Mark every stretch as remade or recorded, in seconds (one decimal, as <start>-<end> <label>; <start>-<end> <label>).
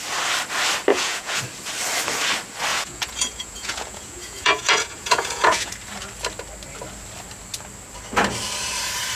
0.0-0.9 recorded; 0.9-1.4 remade; 1.4-2.7 recorded; 2.7-5.7 remade; 5.7-9.1 recorded